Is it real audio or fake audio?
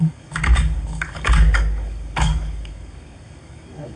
fake